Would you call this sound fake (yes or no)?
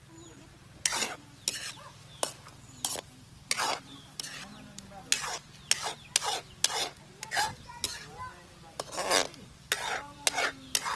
no